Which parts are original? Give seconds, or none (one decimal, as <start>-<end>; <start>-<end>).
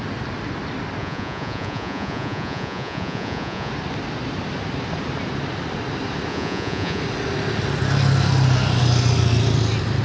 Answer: 0.0-1.0; 3.7-6.3; 7.0-10.0